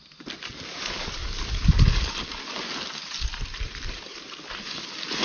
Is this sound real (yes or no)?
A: yes